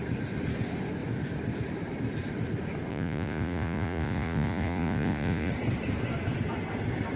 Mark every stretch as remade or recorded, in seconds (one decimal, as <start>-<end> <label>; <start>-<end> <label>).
0.0-2.9 recorded; 2.9-5.5 remade; 5.5-7.2 recorded